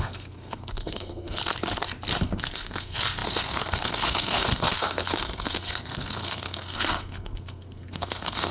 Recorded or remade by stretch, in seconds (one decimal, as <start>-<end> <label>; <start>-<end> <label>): 0.0-1.4 remade; 1.4-2.2 recorded; 2.2-8.5 remade